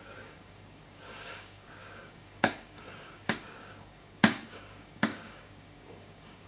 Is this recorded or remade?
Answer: remade